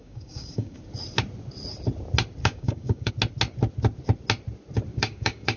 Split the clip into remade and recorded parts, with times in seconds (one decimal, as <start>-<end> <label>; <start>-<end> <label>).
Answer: 0.0-0.8 remade; 0.8-2.4 recorded; 2.4-3.1 remade; 3.1-4.9 recorded; 4.9-5.6 remade